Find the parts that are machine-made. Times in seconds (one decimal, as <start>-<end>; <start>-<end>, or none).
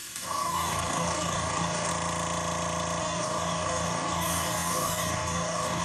0.0-1.9; 3.0-5.8